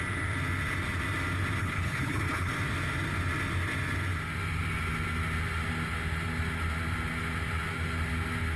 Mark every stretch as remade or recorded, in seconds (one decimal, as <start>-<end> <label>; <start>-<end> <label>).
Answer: 0.0-1.6 recorded; 1.6-2.5 remade; 2.5-8.6 recorded